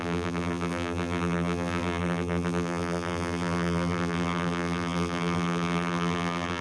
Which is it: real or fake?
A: fake